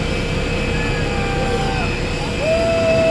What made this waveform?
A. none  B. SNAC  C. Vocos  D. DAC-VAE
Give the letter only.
A